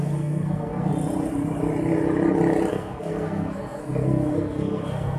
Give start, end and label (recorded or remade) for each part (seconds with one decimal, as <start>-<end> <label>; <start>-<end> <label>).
0.0-0.9 remade; 0.9-2.7 recorded; 2.7-5.2 remade